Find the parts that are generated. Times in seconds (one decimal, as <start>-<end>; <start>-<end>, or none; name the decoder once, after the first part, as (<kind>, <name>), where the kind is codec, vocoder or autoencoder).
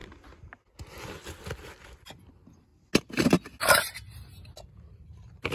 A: 2.3-2.7 (vocoder, BigVGAN v2); 4.6-5.5